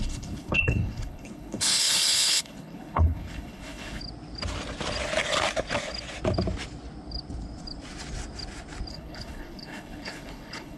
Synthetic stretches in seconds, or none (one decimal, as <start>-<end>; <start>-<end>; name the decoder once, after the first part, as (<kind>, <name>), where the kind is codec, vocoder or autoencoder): 0.0-4.0 (codec, HILCodec); 8.9-10.8